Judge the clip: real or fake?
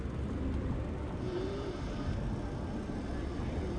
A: real